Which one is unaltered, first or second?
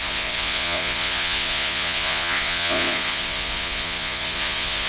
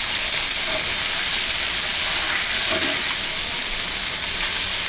second